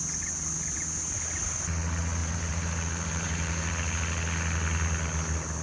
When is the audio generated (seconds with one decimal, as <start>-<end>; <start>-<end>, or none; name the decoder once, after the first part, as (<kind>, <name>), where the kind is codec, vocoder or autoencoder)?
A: 2.2-3.7 (vocoder, BigVGAN v2)